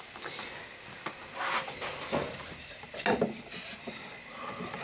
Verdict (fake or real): real